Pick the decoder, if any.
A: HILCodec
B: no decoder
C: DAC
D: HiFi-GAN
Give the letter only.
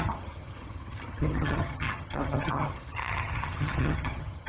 D